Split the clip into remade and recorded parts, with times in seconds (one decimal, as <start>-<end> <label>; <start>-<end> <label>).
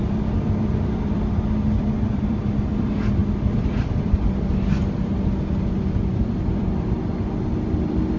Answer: 0.0-4.8 remade; 4.8-6.6 recorded; 6.6-8.2 remade